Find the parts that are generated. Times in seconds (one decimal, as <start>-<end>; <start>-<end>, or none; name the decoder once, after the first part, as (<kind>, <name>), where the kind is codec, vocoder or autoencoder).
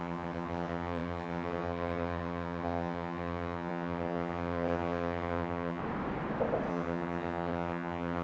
0.0-5.8 (vocoder, HiFi-GAN); 6.7-8.2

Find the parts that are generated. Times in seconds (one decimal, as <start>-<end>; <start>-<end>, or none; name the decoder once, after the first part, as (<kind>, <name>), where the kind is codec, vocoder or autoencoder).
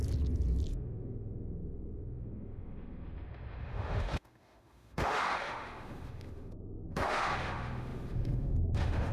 0.7-9.1 (autoencoder, DAC-VAE)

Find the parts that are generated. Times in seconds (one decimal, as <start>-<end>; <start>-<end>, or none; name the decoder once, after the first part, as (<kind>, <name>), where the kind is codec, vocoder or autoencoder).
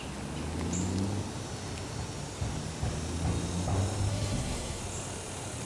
4.1-4.8 (codec, SNAC)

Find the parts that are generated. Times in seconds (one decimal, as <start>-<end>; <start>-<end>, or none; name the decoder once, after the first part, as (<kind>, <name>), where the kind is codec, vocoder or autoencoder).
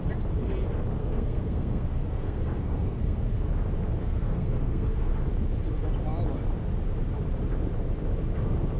1.0-3.5 (codec, SNAC); 4.0-5.1